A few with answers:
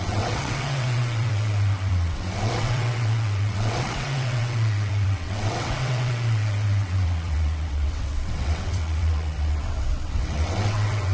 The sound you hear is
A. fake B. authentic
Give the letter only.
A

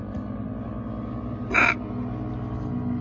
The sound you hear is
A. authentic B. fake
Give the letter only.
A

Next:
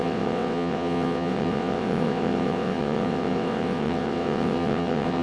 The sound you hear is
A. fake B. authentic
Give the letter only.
A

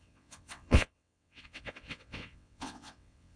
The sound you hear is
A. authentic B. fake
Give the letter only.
B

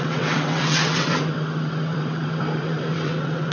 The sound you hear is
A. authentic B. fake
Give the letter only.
B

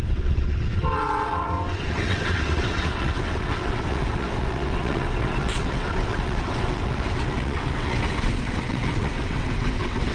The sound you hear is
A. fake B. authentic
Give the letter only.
A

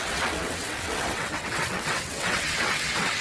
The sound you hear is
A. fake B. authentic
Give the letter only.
A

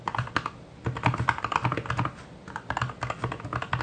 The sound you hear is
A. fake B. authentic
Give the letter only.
B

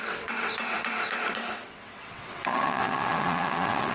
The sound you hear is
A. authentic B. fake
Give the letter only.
B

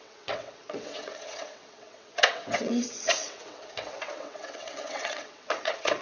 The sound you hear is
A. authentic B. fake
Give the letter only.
B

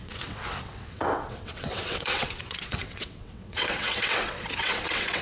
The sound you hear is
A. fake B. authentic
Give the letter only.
A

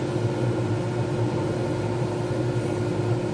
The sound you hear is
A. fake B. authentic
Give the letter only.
B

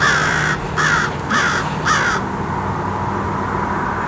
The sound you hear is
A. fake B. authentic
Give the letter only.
B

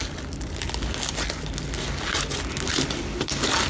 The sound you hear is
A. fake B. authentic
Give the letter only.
B